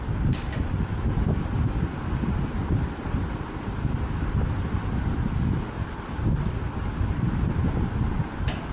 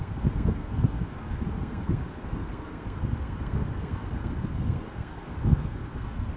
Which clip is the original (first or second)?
first